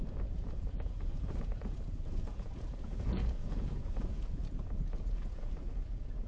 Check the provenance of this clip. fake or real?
fake